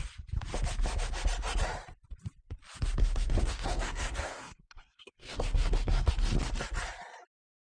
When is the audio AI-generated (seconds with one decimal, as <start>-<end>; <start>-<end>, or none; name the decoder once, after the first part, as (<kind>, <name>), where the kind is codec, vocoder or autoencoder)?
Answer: 3.0-6.1 (codec, SNAC)